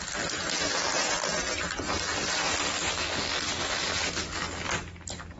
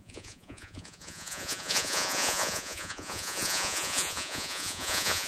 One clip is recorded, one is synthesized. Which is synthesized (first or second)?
second